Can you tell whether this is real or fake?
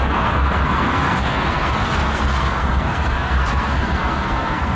fake